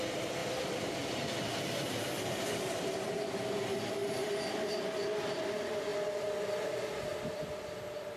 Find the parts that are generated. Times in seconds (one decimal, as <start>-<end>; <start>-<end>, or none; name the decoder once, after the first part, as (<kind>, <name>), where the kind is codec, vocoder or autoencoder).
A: none